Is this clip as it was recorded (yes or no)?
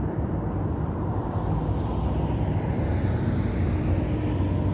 yes